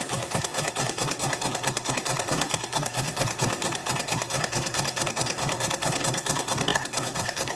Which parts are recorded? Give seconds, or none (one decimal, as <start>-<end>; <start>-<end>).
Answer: none